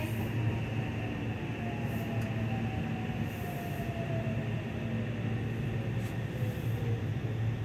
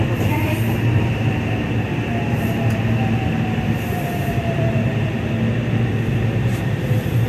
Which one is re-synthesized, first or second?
second